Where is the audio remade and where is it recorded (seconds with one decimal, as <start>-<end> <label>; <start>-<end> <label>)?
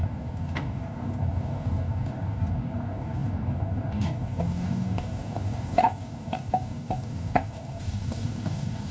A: 0.0-8.9 remade